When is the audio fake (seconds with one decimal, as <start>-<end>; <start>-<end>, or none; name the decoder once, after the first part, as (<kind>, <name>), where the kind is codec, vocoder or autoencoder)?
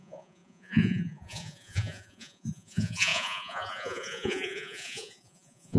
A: 0.0-5.8 (vocoder, Vocos)